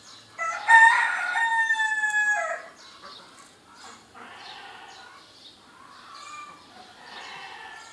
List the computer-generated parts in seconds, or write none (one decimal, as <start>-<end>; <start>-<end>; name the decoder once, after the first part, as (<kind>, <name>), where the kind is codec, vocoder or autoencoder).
none